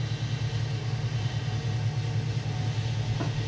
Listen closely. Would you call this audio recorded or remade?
recorded